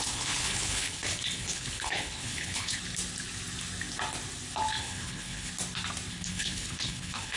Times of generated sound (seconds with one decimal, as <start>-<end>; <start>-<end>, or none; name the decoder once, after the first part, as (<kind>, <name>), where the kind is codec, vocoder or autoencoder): 0.0-2.8 (codec, HILCodec); 4.8-5.5; 6.1-7.4